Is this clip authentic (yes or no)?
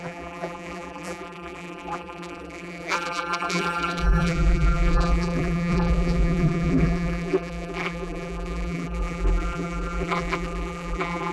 no